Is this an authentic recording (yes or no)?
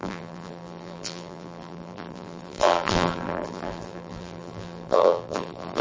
no